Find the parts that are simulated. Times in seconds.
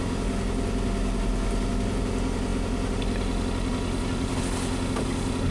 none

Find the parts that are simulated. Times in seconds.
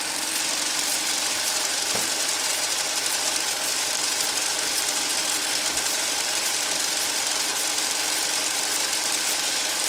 0.0-5.1 (vocoder, BigVGAN v2); 5.8-9.9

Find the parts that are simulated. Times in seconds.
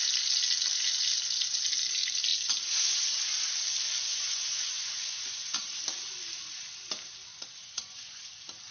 4.1-5.6 (vocoder, Vocos); 7.3-8.2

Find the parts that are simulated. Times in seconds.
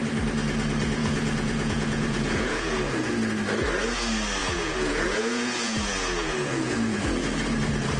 1.0-3.1 (vocoder, Vocos); 4.4-7.0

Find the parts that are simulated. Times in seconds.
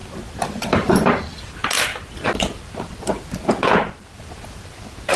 none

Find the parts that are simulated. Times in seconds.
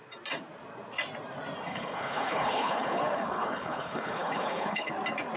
1.7-4.9 (codec, HILCodec)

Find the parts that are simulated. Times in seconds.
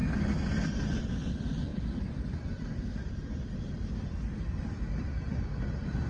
1.7-5.4 (vocoder, BigVGAN v2)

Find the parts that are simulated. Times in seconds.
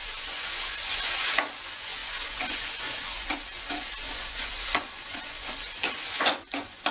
0.0-6.9 (vocoder, Vocos)